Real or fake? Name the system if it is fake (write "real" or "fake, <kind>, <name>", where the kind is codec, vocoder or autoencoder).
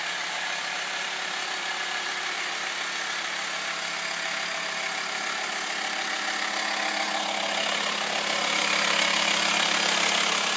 real